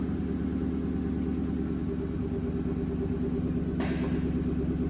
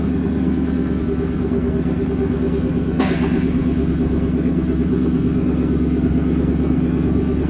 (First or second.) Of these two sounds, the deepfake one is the second